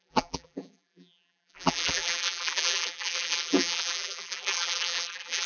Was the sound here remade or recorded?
remade